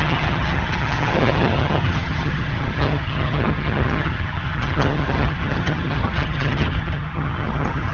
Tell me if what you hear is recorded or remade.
remade